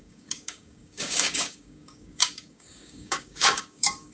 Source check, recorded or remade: remade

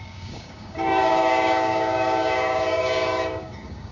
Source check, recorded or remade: remade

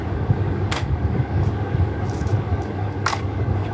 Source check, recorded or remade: remade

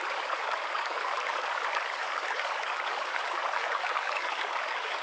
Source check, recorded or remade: remade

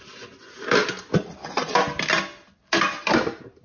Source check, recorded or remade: recorded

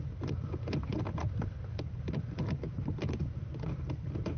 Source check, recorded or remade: recorded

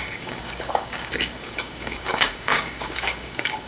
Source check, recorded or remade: remade